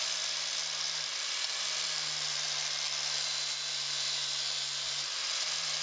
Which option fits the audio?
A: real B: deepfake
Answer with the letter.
B